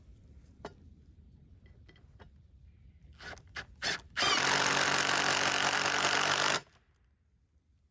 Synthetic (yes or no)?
no